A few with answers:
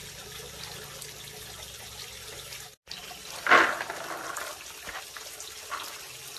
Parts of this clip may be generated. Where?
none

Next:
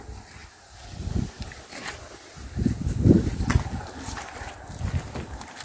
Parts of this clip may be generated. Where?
none